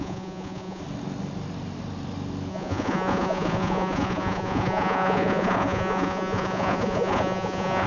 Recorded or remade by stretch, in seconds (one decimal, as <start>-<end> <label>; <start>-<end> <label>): 0.0-0.8 remade; 0.8-2.5 recorded; 2.5-7.9 remade

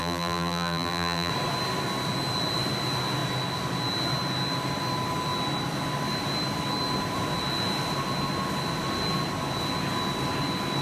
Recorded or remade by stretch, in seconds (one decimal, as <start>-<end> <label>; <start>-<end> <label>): 0.0-1.3 remade; 1.3-10.8 recorded

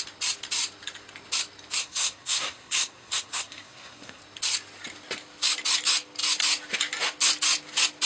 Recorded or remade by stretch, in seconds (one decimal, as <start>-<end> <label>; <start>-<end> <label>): 0.0-1.8 recorded; 1.8-4.2 remade; 4.2-8.1 recorded

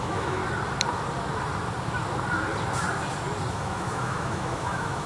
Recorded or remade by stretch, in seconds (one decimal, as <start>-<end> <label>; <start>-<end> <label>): 0.0-0.4 remade; 0.4-3.5 recorded; 3.5-5.1 remade

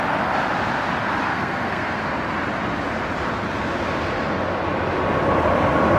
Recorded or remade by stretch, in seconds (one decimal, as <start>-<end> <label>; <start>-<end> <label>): 0.0-1.3 recorded; 1.3-2.0 remade; 2.0-6.0 recorded

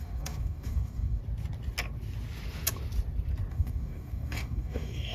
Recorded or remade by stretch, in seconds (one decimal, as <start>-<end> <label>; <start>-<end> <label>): 0.0-1.2 remade; 1.2-3.5 recorded; 3.5-5.1 remade

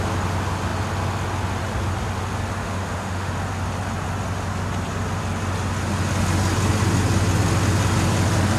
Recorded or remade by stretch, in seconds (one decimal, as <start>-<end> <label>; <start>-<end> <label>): 0.0-2.6 recorded; 2.6-3.3 remade; 3.3-8.6 recorded